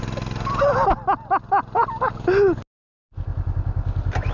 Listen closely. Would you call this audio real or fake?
real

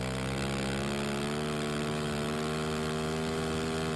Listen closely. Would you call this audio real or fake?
real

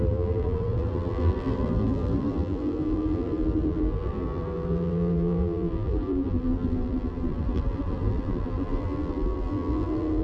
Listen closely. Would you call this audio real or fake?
fake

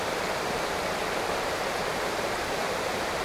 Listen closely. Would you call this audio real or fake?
fake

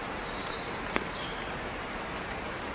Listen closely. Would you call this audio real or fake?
fake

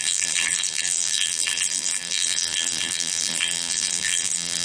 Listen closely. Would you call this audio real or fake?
fake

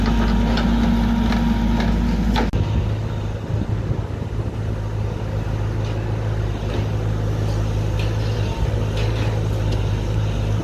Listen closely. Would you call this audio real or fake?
real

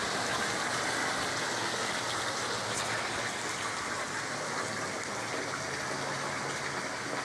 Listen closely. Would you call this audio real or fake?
real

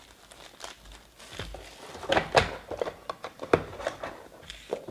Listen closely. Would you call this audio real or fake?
real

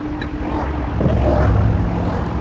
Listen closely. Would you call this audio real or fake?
real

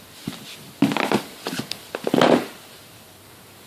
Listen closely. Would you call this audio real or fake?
real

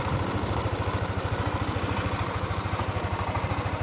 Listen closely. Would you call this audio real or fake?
fake